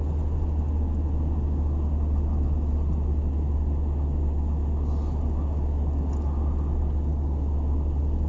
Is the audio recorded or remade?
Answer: recorded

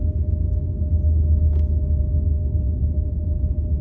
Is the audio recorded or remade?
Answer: recorded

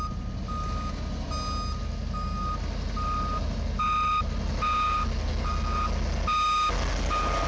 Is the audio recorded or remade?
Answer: recorded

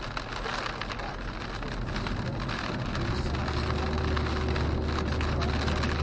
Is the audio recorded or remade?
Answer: recorded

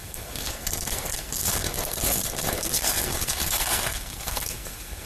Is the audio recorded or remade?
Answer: remade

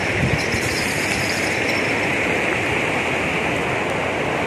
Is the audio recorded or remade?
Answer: recorded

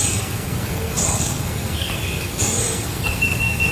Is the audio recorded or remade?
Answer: remade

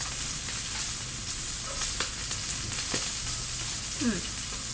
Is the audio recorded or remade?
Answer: recorded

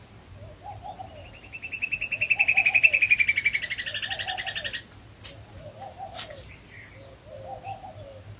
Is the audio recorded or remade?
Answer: recorded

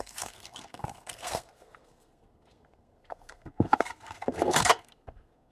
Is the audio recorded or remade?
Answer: remade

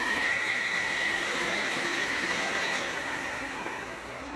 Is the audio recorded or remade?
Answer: remade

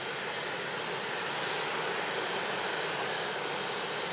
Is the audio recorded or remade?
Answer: recorded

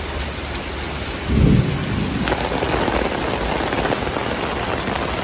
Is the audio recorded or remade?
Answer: recorded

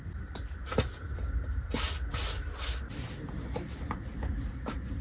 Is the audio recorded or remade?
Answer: recorded